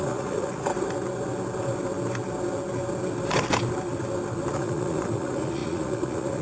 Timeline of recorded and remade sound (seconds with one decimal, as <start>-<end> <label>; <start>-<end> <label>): 0.0-0.7 remade; 0.7-4.5 recorded; 4.5-6.4 remade